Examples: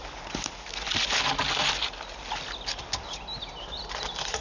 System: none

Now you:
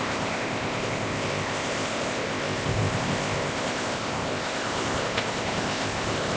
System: codec, ZipCodec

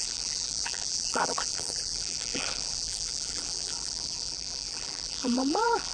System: vocoder, BigVGAN v2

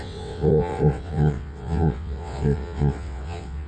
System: vocoder, WaveNeXt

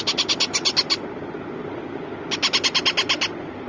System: none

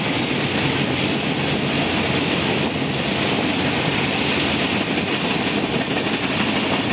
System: none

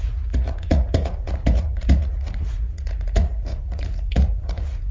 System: vocoder, Vocos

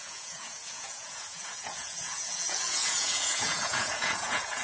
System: vocoder, Vocos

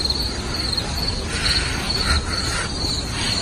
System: none